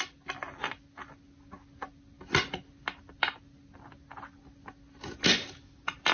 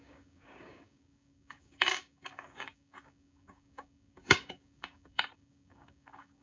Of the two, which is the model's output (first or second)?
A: second